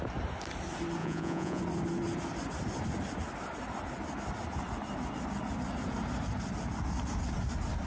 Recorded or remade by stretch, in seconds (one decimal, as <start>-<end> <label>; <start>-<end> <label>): 0.0-1.0 recorded; 1.0-1.6 remade; 1.6-7.9 recorded